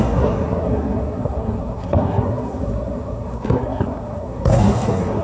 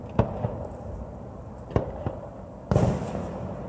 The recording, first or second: second